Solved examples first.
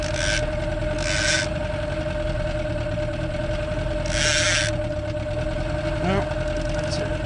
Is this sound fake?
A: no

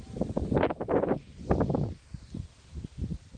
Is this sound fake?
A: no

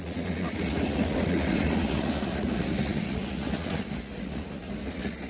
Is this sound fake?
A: yes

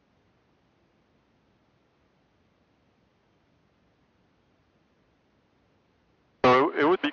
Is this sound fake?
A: no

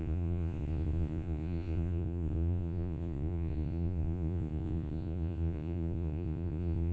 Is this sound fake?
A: yes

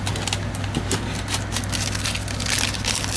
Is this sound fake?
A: no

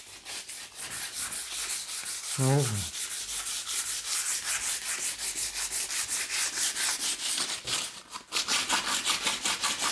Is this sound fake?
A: no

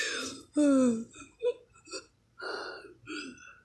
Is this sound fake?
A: no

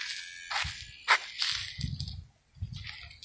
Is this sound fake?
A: no